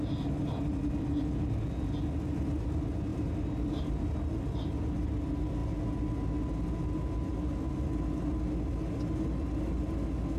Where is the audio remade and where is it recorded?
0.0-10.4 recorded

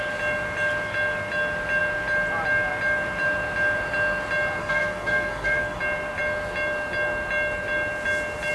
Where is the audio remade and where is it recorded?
0.0-4.6 recorded; 4.6-5.8 remade; 5.8-8.5 recorded

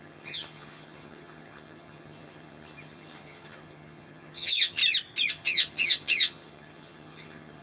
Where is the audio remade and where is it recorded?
0.0-4.8 remade; 4.8-5.3 recorded; 5.3-7.6 remade

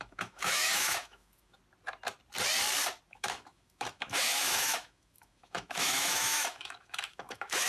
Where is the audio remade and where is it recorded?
0.0-1.6 remade; 1.6-3.1 recorded; 3.1-7.7 remade

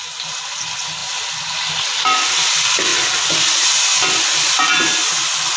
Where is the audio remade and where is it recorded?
0.0-5.6 recorded

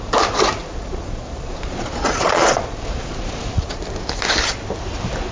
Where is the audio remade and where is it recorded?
0.0-0.6 recorded; 0.6-3.8 remade; 3.8-5.3 recorded

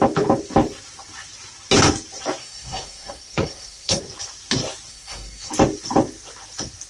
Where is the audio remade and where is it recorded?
0.0-2.4 recorded; 2.4-4.0 remade; 4.0-4.9 recorded; 4.9-5.5 remade; 5.5-6.9 recorded